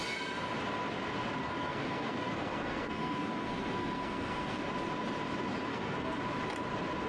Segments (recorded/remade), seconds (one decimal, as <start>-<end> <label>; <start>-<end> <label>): 0.0-1.4 recorded; 1.4-4.6 remade; 4.6-5.7 recorded; 5.7-6.2 remade; 6.2-7.1 recorded